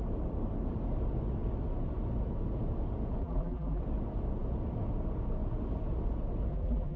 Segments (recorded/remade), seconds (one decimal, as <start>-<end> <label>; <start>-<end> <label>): 0.0-3.2 recorded; 3.2-3.8 remade; 3.8-6.5 recorded; 6.5-7.0 remade